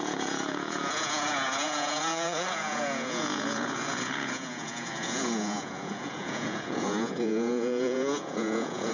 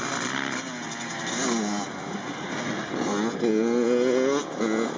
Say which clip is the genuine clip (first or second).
second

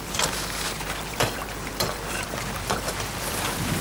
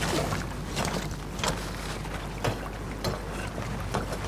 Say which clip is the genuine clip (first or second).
second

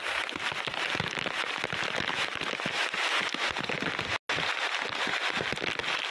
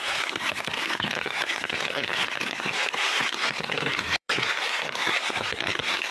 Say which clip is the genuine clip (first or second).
first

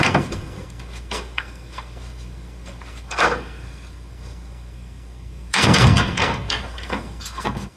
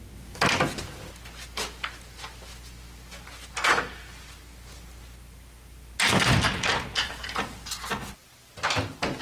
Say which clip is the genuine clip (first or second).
second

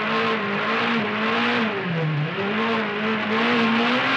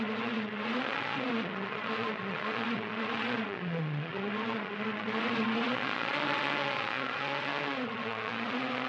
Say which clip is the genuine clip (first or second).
first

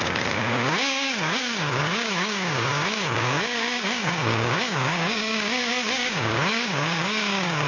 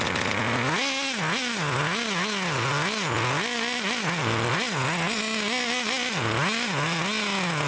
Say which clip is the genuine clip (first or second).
second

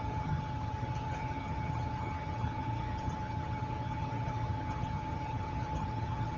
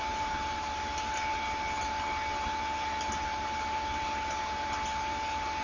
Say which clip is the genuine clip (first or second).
second